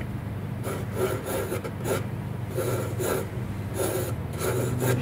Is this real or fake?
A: real